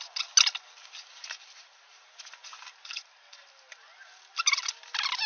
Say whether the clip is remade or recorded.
recorded